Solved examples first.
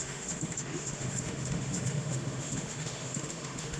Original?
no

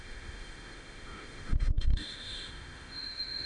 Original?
no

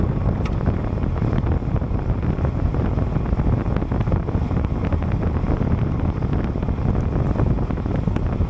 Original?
yes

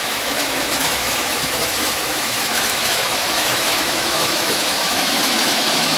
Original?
no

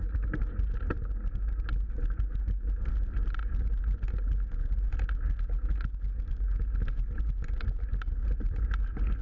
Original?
yes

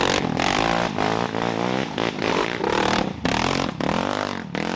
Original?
yes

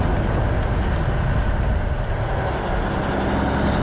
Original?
yes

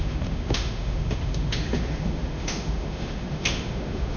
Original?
no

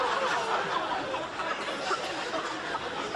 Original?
yes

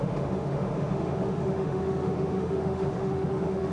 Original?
no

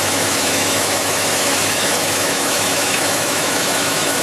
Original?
no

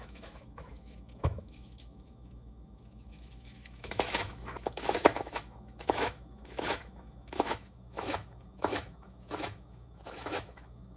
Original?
no